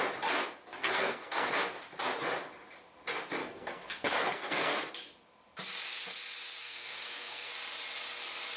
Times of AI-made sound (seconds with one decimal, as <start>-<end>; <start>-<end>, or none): 0.8-1.5; 3.4-4.9; 6.6-7.5